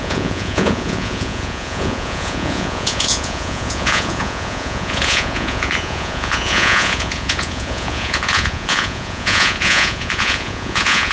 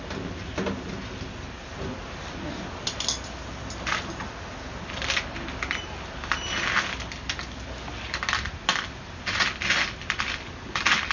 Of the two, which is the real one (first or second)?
second